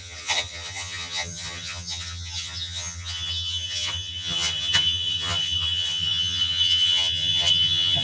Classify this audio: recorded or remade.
remade